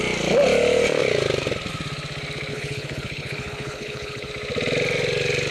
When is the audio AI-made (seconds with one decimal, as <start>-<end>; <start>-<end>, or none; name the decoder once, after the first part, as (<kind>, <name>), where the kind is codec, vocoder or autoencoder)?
2.5-4.3 (codec, HILCodec)